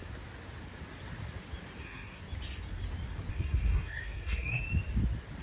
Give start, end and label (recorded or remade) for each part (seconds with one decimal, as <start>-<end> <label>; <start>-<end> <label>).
0.0-1.8 recorded; 1.8-2.2 remade; 2.2-3.3 recorded; 3.3-4.6 remade; 4.6-5.4 recorded